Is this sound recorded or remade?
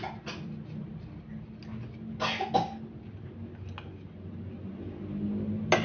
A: recorded